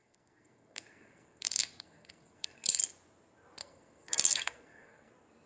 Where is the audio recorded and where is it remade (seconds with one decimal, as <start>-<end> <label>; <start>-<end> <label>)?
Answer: 0.0-2.8 remade; 2.8-3.6 recorded; 3.6-5.1 remade; 5.1-5.5 recorded